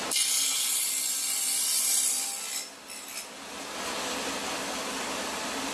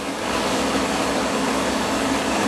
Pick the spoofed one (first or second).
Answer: second